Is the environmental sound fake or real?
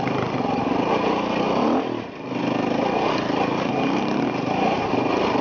real